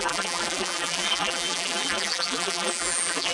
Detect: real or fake fake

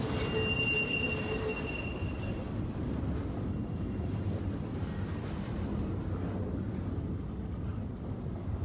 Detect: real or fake real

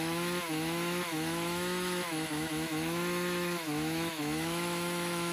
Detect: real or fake fake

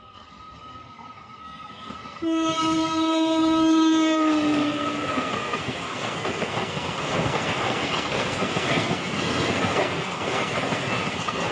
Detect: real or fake fake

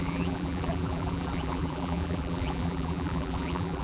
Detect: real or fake fake